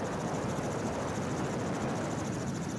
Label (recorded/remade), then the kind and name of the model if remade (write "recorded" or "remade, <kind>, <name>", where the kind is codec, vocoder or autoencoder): recorded